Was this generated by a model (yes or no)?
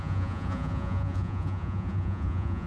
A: yes